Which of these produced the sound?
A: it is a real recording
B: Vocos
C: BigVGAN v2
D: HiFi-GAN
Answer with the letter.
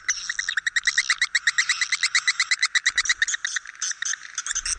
A